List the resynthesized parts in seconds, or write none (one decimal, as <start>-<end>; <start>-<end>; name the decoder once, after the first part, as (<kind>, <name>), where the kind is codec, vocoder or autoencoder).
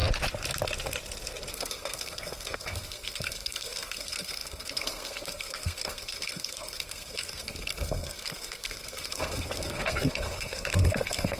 1.5-11.4 (codec, SNAC)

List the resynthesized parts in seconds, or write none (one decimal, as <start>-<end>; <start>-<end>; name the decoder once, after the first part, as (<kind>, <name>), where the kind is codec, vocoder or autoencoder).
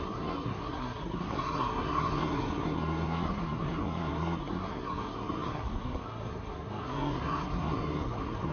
0.0-8.5 (codec, SNAC)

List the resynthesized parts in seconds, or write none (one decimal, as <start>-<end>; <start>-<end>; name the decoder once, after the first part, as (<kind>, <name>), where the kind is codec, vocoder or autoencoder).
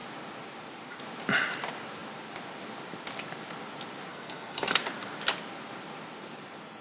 4.1-4.8 (codec, SNAC)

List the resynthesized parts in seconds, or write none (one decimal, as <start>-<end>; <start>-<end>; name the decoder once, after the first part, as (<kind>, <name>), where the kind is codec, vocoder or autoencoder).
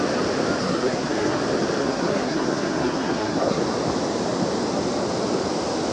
0.6-1.4 (codec, SNAC); 1.8-3.6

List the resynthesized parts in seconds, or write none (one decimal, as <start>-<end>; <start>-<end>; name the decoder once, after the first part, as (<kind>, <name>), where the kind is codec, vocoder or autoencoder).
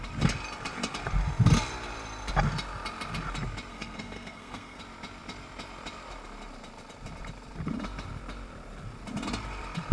3.7-4.8 (codec, SNAC)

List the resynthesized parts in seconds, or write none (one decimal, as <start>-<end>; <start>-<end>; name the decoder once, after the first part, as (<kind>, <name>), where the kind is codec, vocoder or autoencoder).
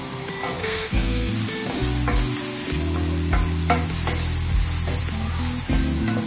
0.6-1.3 (codec, SNAC)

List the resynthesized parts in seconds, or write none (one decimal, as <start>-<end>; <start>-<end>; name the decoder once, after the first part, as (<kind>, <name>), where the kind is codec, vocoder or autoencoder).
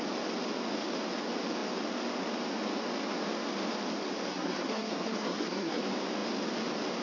4.3-5.8 (codec, SNAC)